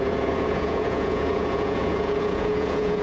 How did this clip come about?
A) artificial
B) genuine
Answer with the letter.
A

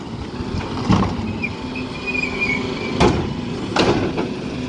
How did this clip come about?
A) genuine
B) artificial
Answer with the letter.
A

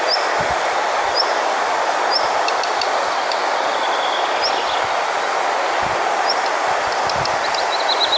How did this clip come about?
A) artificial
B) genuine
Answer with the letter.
B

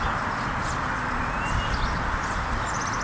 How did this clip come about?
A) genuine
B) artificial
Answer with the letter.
A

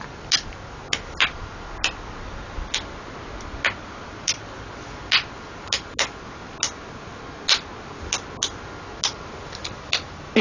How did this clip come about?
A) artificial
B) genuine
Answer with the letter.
B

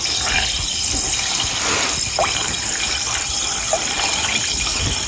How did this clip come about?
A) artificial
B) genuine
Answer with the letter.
B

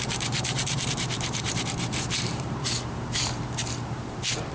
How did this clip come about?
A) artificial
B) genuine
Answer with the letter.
A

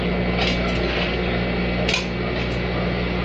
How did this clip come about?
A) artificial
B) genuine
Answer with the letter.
B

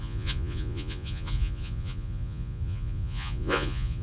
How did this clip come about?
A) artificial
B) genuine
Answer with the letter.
A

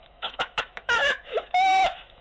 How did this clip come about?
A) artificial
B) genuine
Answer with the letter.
A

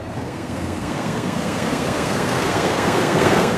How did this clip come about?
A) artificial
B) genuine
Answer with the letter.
A